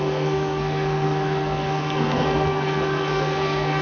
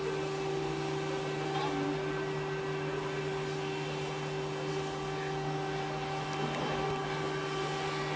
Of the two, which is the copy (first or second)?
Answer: first